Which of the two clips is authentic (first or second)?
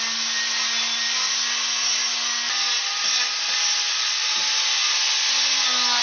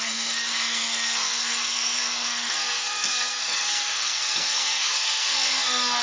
first